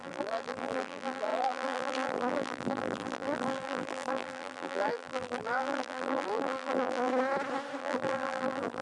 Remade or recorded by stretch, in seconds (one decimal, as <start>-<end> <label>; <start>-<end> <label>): 0.0-7.1 remade; 7.1-7.8 recorded; 7.8-8.8 remade